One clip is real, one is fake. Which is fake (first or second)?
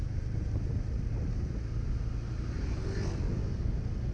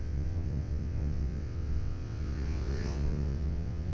second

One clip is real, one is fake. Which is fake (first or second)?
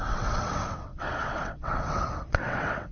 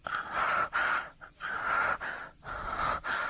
first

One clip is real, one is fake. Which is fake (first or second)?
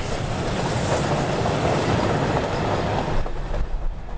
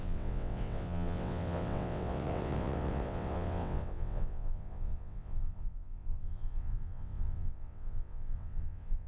second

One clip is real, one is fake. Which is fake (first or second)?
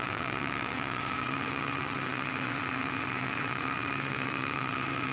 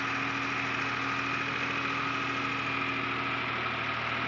first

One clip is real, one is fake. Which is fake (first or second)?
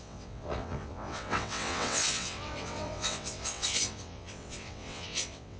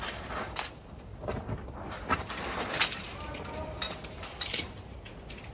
first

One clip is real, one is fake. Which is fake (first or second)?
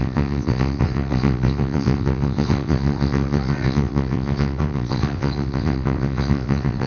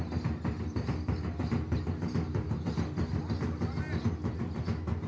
first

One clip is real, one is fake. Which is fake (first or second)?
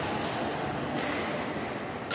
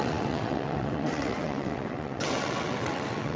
second